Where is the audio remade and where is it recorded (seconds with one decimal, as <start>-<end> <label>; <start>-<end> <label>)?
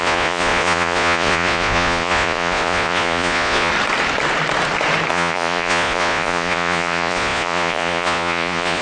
0.0-3.7 remade; 3.7-5.1 recorded; 5.1-8.8 remade